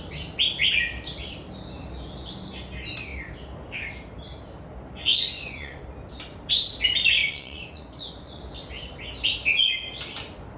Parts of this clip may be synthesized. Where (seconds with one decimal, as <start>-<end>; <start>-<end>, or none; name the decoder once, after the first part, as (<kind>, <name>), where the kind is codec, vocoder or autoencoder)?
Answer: 5.1-5.8 (vocoder, Vocos); 7.2-8.4